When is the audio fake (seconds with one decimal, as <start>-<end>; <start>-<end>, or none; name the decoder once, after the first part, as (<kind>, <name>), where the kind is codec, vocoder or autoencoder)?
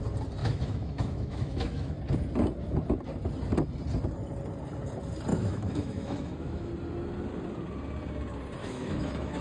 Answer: 0.4-2.0 (autoencoder, DAC-VAE); 5.3-6.7; 8.6-9.4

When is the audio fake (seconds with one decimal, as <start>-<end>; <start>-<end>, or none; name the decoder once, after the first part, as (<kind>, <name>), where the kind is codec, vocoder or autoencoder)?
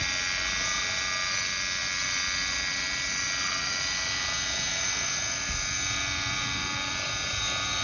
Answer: none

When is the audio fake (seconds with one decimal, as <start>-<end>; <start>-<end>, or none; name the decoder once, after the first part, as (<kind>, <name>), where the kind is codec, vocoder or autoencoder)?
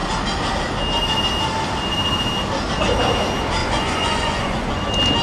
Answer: 3.6-4.8 (vocoder, Vocos)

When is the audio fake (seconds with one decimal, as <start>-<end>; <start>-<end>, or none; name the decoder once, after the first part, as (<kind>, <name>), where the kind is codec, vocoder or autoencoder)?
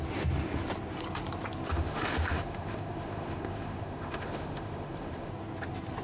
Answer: 1.7-5.3 (autoencoder, DAC-VAE)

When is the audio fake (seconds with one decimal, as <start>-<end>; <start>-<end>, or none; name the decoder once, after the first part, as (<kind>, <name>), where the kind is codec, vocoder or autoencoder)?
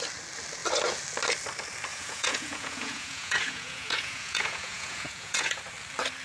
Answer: 1.9-5.6 (vocoder, Vocos)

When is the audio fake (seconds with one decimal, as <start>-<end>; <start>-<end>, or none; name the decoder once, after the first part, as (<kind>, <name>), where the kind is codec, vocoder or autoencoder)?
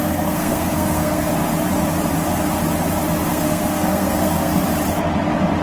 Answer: 0.0-1.3 (codec, SNAC); 3.3-4.5